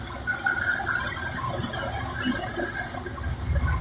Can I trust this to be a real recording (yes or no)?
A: yes